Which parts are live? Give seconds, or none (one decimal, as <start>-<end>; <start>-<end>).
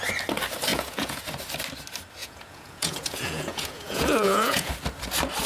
0.0-0.7; 1.2-2.2; 4.7-5.5